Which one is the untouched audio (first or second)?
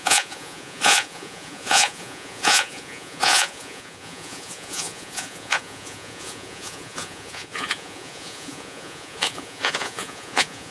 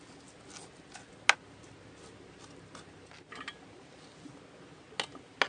second